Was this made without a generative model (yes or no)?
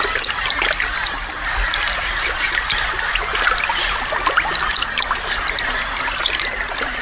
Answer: yes